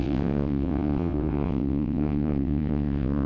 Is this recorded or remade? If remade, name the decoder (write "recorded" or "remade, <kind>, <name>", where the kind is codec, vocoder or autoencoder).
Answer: remade, vocoder, WaveNeXt